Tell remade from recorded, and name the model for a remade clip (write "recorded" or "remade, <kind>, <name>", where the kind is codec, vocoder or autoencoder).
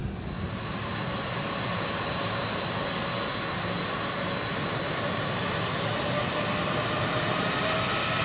recorded